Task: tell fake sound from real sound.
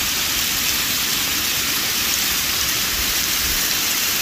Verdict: real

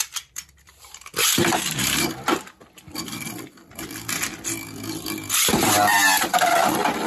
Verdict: fake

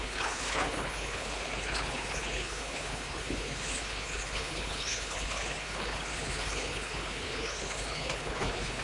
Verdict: fake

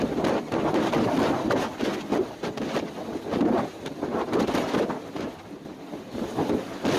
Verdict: fake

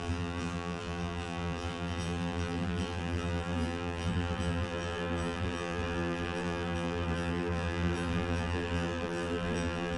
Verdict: fake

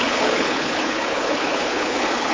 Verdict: fake